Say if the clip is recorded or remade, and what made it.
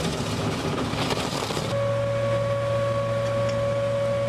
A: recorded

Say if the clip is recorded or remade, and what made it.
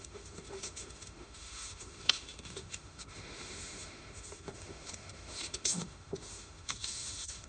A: remade, autoencoder, DAC-VAE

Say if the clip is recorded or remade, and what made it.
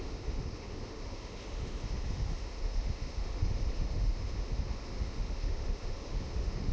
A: remade, autoencoder, DAC-VAE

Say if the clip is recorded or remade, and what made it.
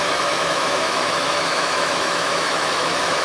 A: remade, autoencoder, DAC-VAE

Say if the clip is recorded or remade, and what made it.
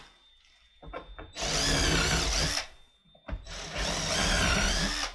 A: recorded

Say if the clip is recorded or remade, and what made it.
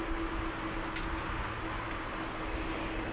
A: recorded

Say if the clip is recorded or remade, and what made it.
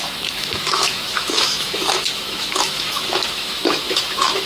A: remade, autoencoder, DAC-VAE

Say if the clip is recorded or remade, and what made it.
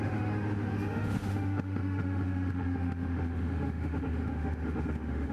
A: remade, autoencoder, DAC-VAE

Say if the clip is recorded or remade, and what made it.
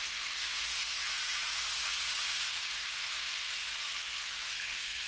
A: remade, autoencoder, DAC-VAE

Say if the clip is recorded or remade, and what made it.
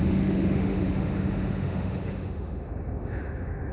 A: remade, autoencoder, DAC-VAE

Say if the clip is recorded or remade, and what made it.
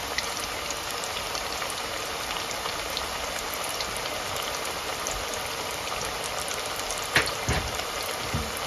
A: recorded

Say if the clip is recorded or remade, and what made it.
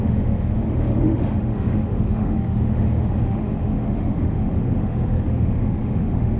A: remade, autoencoder, DAC-VAE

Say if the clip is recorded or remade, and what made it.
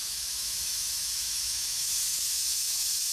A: remade, autoencoder, DAC-VAE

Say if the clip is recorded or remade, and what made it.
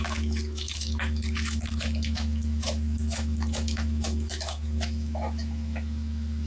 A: remade, autoencoder, DAC-VAE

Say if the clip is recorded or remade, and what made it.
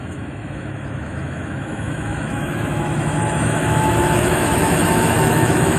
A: remade, autoencoder, DAC-VAE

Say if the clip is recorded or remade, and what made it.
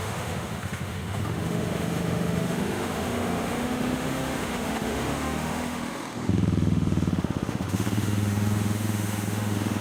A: remade, autoencoder, DAC-VAE